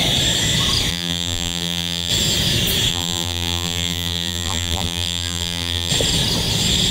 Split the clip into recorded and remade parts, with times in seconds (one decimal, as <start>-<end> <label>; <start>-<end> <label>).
0.0-0.9 recorded; 0.9-2.1 remade; 2.1-2.9 recorded; 2.9-5.9 remade; 5.9-6.9 recorded